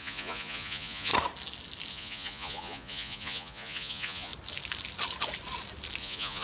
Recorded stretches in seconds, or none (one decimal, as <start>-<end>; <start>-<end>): 1.1-1.9; 4.3-6.0